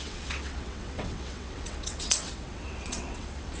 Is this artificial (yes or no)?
yes